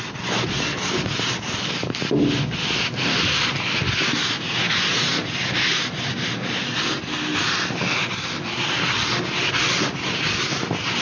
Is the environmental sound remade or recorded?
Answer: recorded